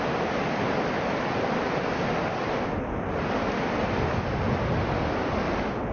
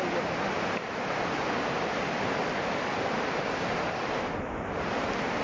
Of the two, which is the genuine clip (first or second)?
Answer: first